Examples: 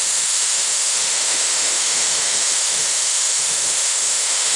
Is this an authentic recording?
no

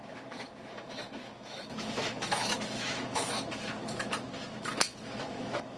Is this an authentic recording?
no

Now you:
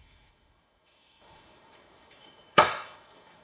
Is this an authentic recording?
no